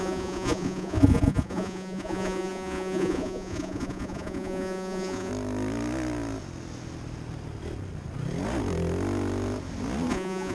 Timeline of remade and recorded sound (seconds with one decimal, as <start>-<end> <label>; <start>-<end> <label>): 0.0-5.3 remade; 5.3-10.1 recorded; 10.1-10.5 remade